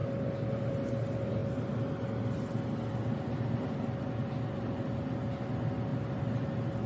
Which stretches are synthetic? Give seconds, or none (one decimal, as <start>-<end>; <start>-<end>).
none